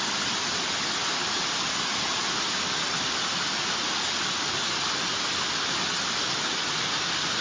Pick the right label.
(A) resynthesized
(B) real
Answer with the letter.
B